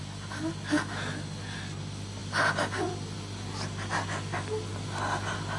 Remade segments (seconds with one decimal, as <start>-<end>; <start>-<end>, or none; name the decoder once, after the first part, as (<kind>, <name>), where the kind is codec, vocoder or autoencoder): none